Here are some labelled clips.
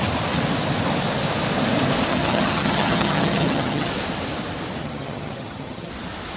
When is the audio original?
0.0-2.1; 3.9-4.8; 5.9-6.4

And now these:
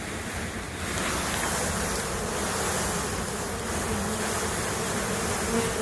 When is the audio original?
0.0-5.8

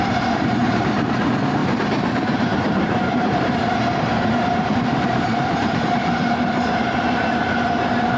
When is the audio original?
none

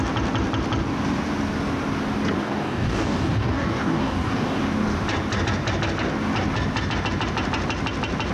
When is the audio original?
0.0-2.4; 4.6-8.3

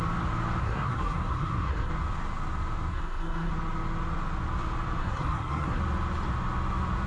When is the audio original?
0.0-0.6; 1.9-2.9; 3.5-5.0; 5.8-7.1

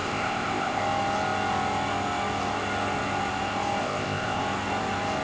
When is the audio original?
0.8-3.8; 4.4-5.2

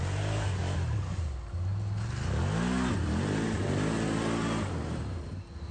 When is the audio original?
0.0-5.7

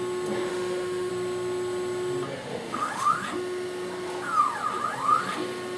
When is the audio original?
0.0-0.5; 1.1-2.5; 3.1-5.8